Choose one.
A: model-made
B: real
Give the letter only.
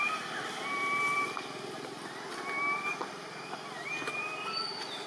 B